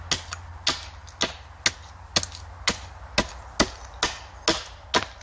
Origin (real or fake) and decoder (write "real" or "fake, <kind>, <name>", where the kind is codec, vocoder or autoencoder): real